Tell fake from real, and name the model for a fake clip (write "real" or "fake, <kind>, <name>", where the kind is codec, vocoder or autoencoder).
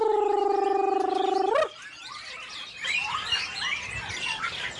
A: real